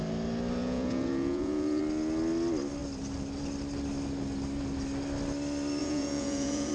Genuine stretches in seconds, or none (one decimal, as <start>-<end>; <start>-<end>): 0.0-0.6; 1.8-5.8